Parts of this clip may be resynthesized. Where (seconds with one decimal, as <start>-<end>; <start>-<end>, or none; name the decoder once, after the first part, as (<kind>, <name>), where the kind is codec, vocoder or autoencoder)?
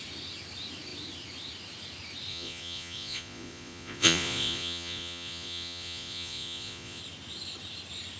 2.3-7.0 (vocoder, Vocos)